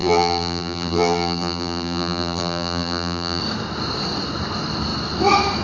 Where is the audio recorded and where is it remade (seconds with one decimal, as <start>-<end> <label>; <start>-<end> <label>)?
0.0-3.4 remade; 3.4-5.6 recorded